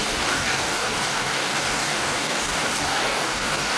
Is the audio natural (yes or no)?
no